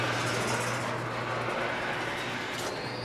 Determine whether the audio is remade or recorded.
recorded